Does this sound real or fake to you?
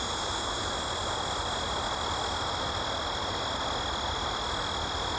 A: real